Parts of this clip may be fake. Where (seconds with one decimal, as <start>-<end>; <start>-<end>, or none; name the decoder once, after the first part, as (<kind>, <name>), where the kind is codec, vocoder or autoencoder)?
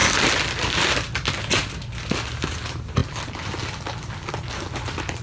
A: none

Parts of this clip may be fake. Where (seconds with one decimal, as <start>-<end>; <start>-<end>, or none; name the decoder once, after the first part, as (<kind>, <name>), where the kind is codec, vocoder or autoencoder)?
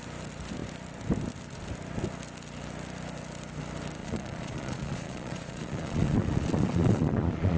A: 4.0-7.6 (vocoder, Vocos)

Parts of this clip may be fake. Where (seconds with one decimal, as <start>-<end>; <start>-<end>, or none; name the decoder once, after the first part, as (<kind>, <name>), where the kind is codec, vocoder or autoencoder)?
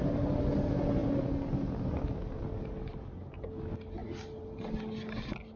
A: none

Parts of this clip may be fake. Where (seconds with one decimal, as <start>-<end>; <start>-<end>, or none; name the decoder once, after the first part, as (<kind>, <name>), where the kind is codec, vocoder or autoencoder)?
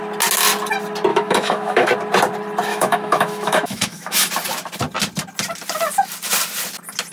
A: 1.1-1.9 (autoencoder, DAC-VAE); 2.7-4.3